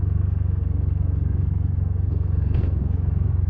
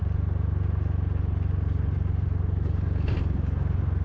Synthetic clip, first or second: first